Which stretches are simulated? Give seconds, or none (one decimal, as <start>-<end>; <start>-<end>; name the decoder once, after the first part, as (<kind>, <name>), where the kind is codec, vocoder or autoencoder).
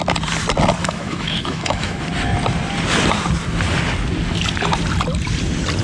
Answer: 0.8-2.0 (autoencoder, DAC-VAE)